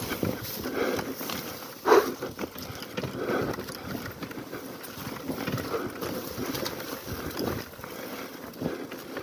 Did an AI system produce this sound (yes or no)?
no